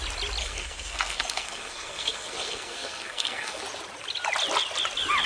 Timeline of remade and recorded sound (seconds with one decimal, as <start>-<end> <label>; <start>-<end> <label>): 0.0-0.4 recorded; 0.4-3.6 remade; 3.6-5.3 recorded